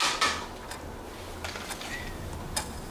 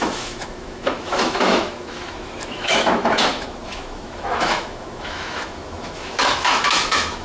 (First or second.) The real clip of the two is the first